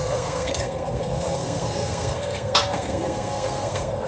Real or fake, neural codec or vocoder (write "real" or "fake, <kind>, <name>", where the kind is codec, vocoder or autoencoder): fake, codec, SNAC